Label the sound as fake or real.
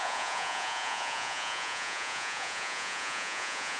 fake